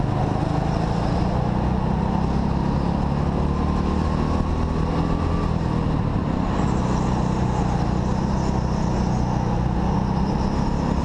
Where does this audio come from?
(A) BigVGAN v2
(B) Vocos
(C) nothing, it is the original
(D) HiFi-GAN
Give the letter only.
C